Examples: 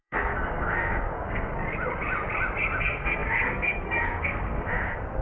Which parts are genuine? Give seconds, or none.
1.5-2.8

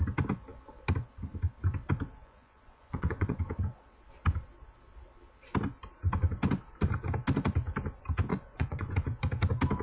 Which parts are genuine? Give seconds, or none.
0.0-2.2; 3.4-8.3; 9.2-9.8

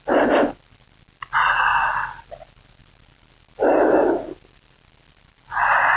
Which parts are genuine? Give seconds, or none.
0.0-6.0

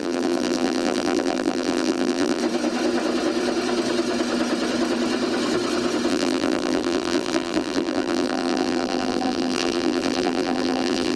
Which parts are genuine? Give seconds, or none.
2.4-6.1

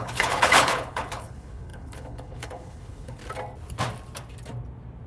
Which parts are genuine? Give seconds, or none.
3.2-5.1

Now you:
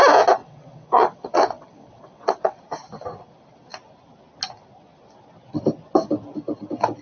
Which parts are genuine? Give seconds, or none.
0.0-0.4; 2.6-7.0